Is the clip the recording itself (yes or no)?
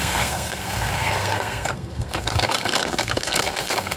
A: no